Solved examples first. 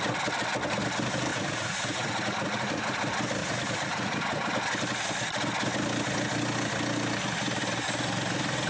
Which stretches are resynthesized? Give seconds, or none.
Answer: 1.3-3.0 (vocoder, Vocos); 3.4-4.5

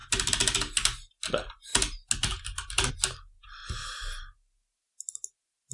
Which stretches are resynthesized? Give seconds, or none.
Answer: none

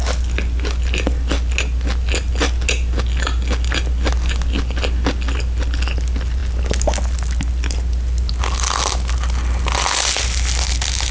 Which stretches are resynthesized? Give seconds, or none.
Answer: none

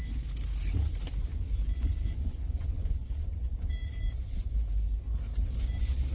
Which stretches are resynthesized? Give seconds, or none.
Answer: 1.3-5.0 (vocoder, Vocos)

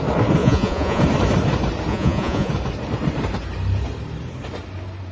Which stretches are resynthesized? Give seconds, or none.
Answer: 0.4-1.0 (vocoder, Vocos); 1.9-2.5

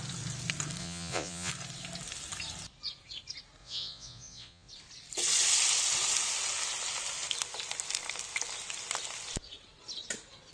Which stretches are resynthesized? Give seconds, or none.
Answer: 0.8-1.5 (vocoder, Vocos); 3.6-4.7

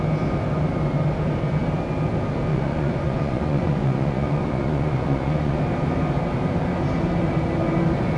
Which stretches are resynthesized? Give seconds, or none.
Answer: 2.5-5.6 (vocoder, Vocos)

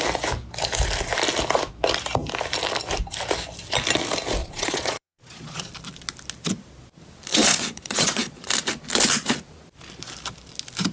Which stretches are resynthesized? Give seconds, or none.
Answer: 4.4-5.7 (vocoder, Vocos); 7.3-8.5